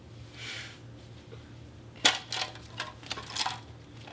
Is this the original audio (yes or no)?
yes